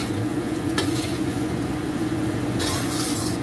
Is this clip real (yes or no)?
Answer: no